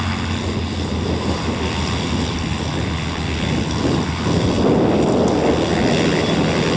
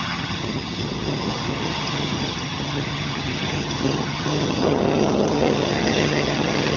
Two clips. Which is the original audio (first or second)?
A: first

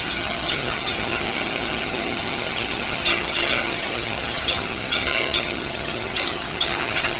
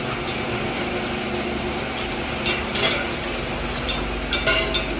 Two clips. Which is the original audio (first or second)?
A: second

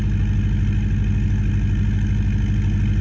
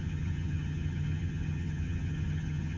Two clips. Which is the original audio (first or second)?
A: first